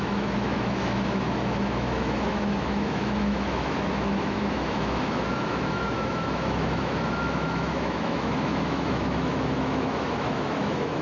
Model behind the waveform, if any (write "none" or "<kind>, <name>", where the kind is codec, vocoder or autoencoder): autoencoder, DAC-VAE